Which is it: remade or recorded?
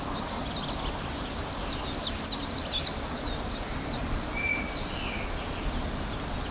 recorded